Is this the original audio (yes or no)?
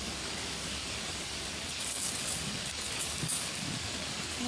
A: no